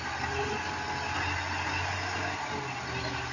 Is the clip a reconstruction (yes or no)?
no